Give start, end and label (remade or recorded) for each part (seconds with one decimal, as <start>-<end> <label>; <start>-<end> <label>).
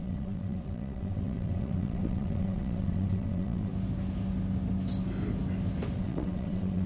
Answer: 0.0-3.7 remade; 3.7-6.0 recorded; 6.0-6.9 remade